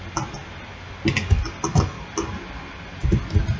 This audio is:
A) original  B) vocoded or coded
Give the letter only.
A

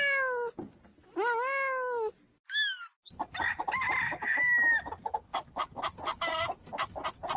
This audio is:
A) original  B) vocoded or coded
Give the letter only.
A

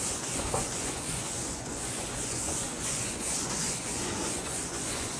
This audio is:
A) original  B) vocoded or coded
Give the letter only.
B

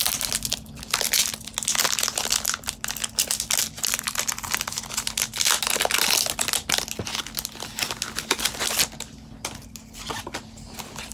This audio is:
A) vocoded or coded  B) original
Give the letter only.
B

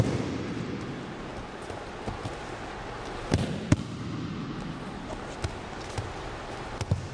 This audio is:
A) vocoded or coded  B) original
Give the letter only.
B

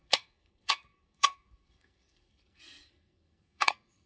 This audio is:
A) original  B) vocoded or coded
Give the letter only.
B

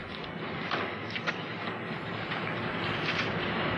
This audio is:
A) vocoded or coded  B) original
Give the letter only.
B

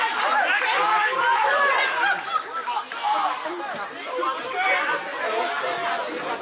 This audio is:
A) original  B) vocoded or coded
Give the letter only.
A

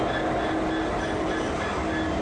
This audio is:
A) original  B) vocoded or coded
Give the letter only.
A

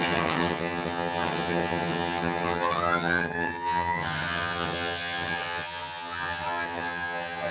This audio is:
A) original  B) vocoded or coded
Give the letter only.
B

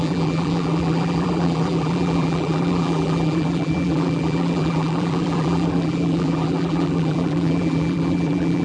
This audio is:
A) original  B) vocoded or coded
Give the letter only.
B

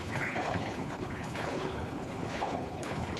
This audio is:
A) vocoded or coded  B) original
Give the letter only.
A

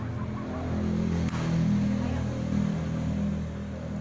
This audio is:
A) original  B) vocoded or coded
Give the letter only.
A